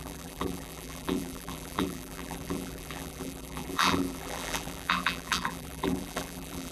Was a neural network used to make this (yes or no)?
yes